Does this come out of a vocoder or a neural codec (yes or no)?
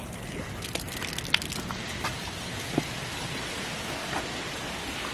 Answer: no